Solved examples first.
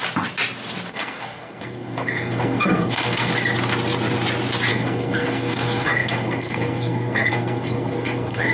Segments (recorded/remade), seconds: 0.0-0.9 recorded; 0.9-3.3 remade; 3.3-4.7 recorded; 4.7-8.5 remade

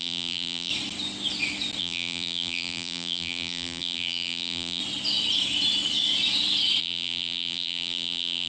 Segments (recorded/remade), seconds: 0.0-0.7 remade; 0.7-1.8 recorded; 1.8-4.8 remade; 4.8-6.8 recorded; 6.8-8.5 remade

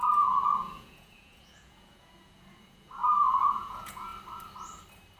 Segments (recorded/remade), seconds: 0.0-3.0 remade; 3.0-3.5 recorded; 3.5-4.1 remade; 4.1-5.2 recorded

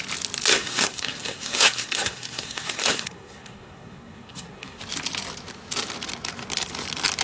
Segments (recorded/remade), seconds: 0.0-0.5 recorded; 0.5-4.8 remade; 4.8-7.2 recorded

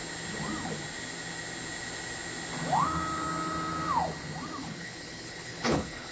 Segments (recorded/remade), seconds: 0.0-4.6 recorded; 4.6-6.1 remade

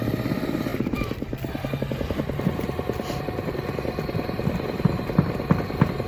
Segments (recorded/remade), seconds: 0.0-6.1 remade

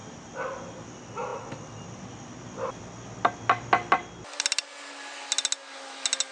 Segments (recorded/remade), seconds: 0.0-6.3 recorded